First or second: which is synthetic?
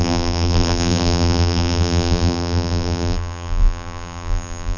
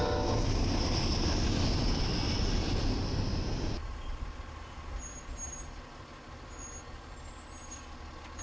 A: first